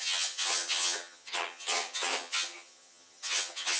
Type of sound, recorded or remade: remade